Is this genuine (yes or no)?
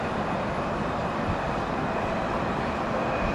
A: yes